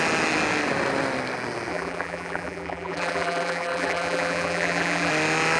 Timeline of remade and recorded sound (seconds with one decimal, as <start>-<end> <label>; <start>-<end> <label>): 0.0-1.7 recorded; 1.7-5.1 remade; 5.1-5.6 recorded